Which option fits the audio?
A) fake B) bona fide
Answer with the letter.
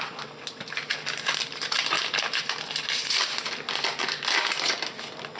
B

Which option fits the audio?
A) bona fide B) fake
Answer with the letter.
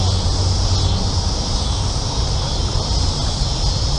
A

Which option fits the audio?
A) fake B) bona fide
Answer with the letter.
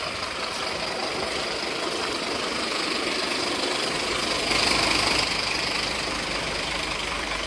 A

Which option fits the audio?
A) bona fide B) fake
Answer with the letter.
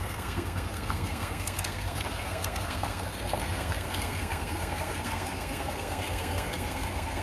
B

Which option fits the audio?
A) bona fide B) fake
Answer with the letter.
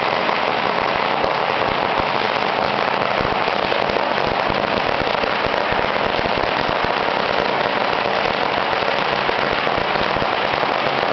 A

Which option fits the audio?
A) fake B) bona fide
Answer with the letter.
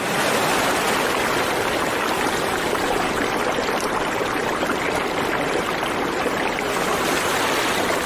B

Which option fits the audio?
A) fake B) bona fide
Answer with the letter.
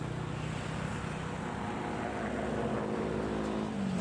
B